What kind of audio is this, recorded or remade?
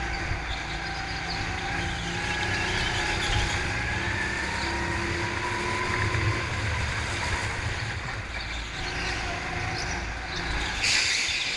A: recorded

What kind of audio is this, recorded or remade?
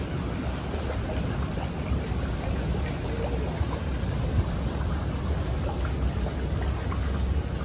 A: recorded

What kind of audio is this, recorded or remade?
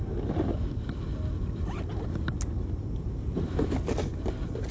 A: recorded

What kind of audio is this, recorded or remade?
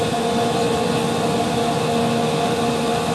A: recorded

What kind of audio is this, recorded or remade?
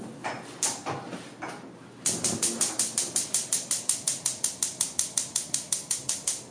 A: recorded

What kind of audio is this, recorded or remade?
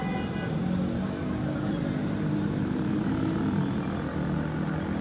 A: recorded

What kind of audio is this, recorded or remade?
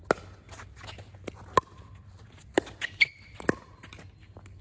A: recorded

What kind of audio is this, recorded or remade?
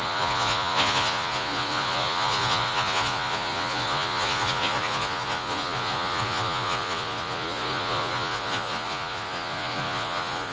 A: remade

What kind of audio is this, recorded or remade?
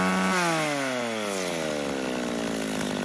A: recorded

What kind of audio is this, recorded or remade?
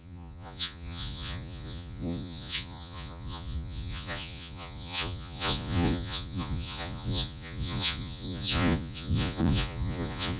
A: remade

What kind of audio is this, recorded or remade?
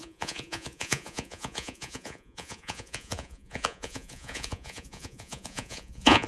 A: remade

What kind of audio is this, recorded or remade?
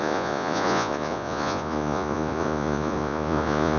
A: remade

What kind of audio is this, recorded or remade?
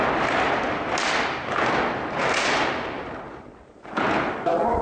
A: recorded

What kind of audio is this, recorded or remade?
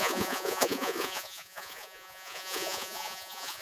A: remade